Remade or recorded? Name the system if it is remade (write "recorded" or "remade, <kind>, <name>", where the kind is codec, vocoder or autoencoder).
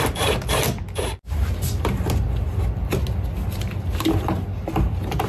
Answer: recorded